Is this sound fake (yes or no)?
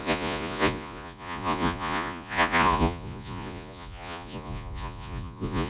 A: yes